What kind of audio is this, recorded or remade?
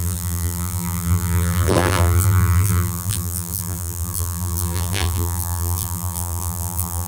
remade